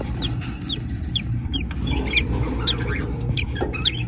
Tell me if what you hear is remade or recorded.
remade